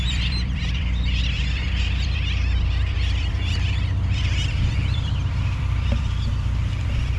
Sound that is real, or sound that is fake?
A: fake